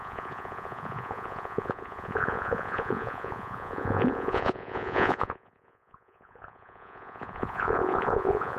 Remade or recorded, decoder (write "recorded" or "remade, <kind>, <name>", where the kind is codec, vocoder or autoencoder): remade, vocoder, Vocos